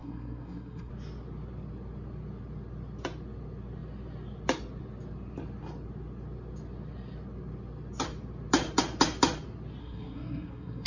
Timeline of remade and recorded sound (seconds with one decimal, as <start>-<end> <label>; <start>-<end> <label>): 0.0-0.9 remade; 0.9-9.8 recorded; 9.8-10.9 remade